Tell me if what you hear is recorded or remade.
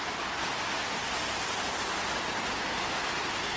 recorded